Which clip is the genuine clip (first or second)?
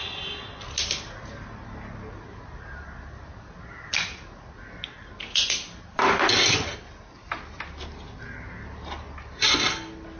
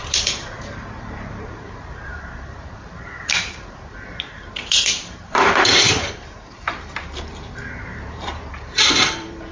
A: first